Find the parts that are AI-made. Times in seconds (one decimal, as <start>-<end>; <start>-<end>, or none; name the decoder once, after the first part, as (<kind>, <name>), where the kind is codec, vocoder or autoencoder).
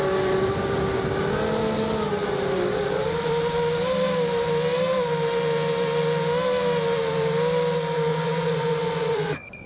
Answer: 8.1-9.7 (vocoder, Vocos)